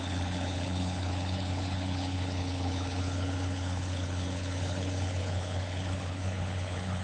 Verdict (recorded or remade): remade